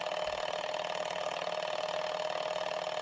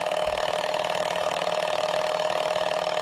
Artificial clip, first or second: second